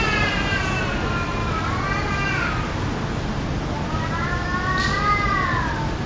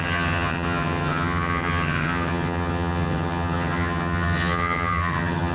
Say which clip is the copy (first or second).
second